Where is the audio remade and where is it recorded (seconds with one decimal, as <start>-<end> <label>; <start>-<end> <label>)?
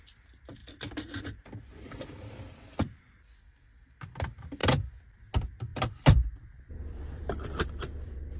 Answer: 0.0-0.6 recorded; 0.6-3.0 remade; 3.0-4.6 recorded; 4.6-5.3 remade; 5.3-5.7 recorded; 5.7-8.4 remade